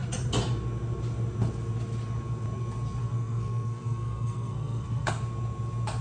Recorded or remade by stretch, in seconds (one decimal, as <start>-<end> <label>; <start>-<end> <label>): 0.0-3.0 recorded; 3.0-5.1 remade; 5.1-6.0 recorded